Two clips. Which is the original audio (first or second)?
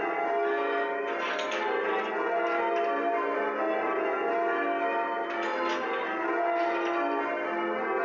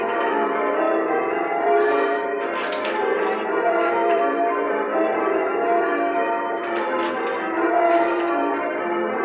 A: first